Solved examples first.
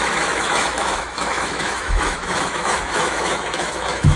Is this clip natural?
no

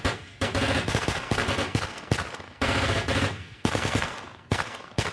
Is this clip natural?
no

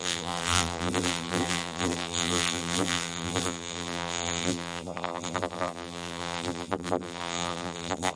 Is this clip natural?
no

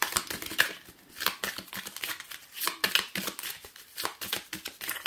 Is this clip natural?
yes